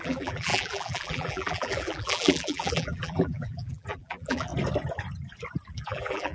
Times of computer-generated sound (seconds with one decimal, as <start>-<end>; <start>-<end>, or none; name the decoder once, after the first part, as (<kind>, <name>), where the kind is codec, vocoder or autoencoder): 0.0-4.5 (vocoder, BigVGAN v2); 5.7-6.3